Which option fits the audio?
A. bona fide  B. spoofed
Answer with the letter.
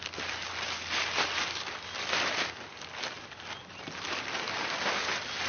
A